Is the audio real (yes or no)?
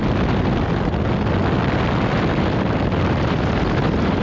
yes